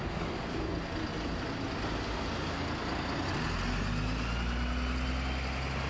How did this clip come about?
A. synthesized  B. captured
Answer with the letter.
B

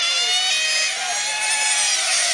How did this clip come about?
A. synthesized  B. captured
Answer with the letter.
B